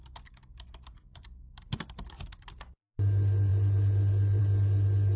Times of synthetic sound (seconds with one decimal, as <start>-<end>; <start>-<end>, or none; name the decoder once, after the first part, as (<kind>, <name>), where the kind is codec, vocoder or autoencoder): none